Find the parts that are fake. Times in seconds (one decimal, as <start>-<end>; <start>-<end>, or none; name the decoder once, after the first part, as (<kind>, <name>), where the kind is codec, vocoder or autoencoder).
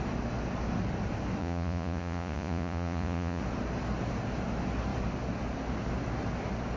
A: 1.4-3.4 (vocoder, Vocos)